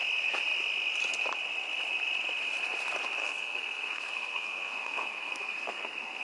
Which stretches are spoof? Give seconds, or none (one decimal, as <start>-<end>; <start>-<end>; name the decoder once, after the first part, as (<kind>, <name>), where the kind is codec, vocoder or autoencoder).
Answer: 3.2-6.2 (codec, SNAC)

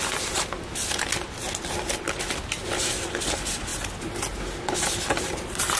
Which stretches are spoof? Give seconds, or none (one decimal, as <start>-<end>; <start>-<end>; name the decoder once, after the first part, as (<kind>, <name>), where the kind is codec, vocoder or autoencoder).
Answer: none

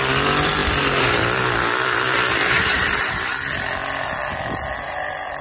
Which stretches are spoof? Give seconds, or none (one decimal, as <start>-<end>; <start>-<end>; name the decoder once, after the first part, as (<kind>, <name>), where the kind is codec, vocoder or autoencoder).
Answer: 2.4-3.1 (vocoder, BigVGAN v2)

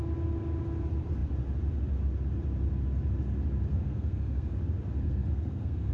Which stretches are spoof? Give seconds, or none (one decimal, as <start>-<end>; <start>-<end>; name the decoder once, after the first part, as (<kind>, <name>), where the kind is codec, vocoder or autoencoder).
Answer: 3.7-4.5 (codec, SNAC); 5.0-5.9

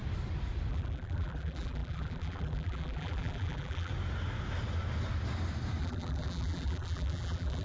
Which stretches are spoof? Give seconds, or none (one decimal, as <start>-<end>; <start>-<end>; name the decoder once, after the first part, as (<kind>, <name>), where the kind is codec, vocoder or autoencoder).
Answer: 0.7-3.9 (vocoder, BigVGAN v2); 5.8-7.6

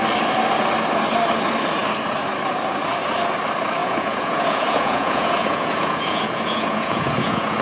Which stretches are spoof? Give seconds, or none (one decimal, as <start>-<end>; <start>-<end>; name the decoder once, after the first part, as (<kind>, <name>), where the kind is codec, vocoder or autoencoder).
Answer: 3.8-7.6 (vocoder, Vocos)